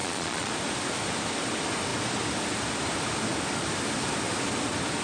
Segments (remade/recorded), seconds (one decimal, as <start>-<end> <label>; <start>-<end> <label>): 0.0-0.5 remade; 0.5-5.0 recorded